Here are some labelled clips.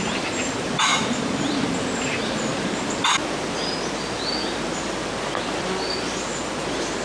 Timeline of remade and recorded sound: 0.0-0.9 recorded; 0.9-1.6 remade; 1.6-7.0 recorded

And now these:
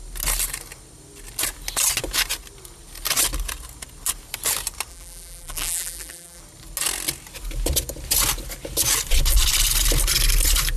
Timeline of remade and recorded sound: 0.0-4.9 recorded; 4.9-6.4 remade; 6.4-10.8 recorded

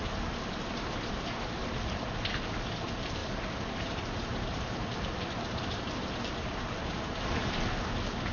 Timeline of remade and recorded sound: 0.0-1.6 recorded; 1.6-2.7 remade; 2.7-3.2 recorded; 3.2-7.9 remade; 7.9-8.3 recorded

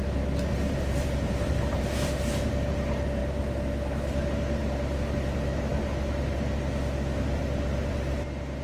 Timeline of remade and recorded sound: 0.0-0.5 recorded; 0.5-2.3 remade; 2.3-8.6 recorded